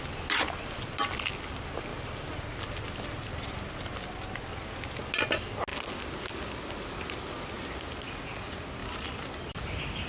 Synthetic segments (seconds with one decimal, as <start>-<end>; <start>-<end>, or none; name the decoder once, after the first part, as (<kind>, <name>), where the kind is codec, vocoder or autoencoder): 1.9-5.0 (vocoder, BigVGAN v2)